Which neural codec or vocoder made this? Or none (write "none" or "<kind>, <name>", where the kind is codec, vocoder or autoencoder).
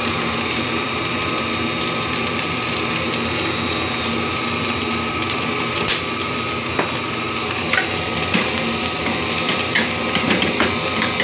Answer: none